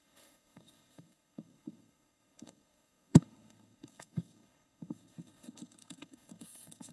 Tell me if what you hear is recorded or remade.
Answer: remade